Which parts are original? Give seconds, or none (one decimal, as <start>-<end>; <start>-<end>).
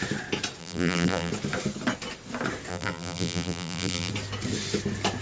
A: 0.0-0.6; 1.3-2.7; 4.1-5.2